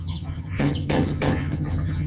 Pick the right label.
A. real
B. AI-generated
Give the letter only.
B